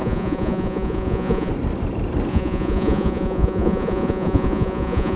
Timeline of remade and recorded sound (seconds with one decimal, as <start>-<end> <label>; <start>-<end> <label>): 0.0-1.5 remade; 1.5-2.3 recorded; 2.3-5.2 remade